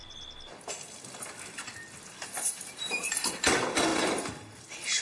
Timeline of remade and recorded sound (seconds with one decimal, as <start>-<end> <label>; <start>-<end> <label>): 0.0-3.9 recorded; 3.9-4.6 remade; 4.6-5.0 recorded